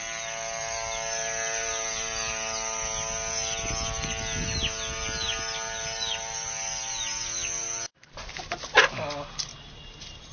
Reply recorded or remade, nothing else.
recorded